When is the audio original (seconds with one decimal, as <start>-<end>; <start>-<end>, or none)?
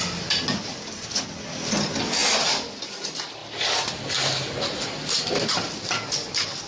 0.0-6.7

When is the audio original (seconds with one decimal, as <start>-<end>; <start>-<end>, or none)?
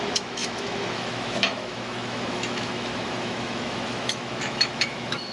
none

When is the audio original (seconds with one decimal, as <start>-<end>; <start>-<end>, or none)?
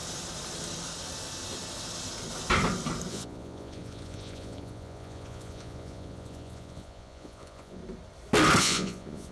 0.0-3.1; 7.8-8.6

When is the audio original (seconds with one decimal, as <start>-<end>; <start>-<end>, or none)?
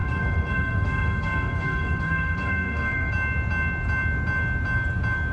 3.1-5.3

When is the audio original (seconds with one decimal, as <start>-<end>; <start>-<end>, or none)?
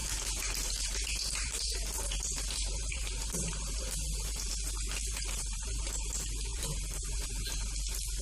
4.5-5.0; 5.8-6.5; 7.3-8.2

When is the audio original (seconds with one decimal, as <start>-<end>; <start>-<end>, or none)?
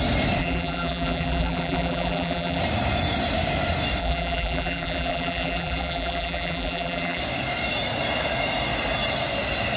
0.0-0.4; 2.6-4.0; 7.2-9.8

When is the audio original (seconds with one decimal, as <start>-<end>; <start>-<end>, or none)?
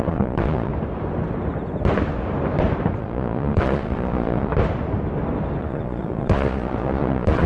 0.7-3.0; 4.5-5.6